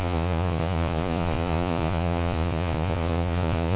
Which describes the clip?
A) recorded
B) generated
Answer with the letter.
B